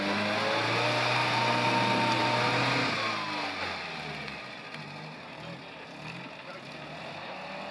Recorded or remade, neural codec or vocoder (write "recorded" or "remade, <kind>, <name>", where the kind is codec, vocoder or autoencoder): recorded